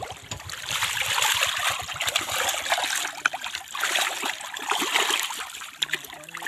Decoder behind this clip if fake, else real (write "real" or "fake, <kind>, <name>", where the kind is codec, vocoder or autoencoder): real